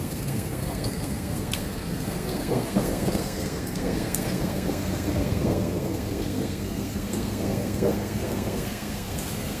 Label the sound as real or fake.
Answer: fake